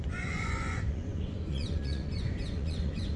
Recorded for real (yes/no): no